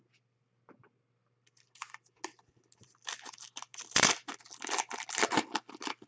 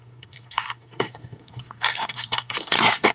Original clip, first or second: first